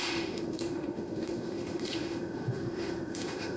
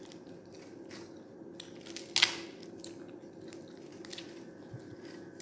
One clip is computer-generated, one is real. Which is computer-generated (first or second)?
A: first